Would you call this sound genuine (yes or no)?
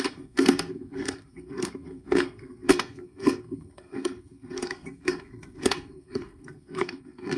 no